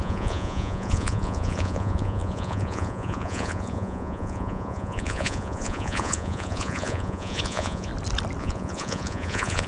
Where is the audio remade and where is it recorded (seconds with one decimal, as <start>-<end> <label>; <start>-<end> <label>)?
0.0-7.9 remade; 7.9-8.4 recorded; 8.4-9.7 remade